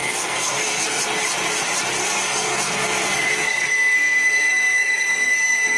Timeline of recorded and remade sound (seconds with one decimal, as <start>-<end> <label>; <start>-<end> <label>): 0.0-1.0 remade; 1.0-2.0 recorded; 2.0-5.8 remade